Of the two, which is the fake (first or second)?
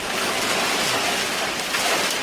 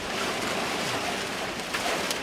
second